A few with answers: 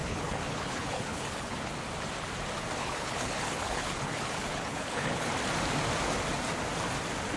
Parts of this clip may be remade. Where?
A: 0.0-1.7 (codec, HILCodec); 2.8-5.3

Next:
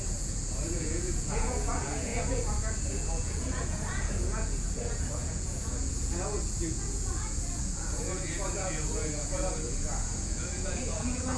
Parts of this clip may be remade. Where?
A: 0.0-11.4 (vocoder, Vocos)

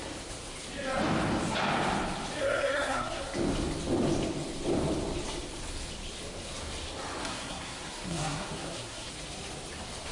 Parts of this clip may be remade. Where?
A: 2.4-3.2 (codec, SNAC); 7.2-9.1

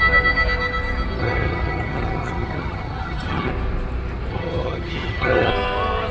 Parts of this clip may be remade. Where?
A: 1.2-3.5 (vocoder, HiFi-GAN); 4.3-5.5

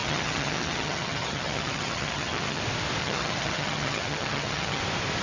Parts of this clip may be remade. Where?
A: 0.0-2.6 (vocoder, HiFi-GAN); 3.0-4.8